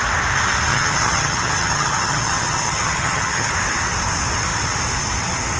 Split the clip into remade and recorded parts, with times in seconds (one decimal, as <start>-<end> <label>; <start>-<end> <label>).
0.0-0.7 recorded; 0.7-3.5 remade; 3.5-5.6 recorded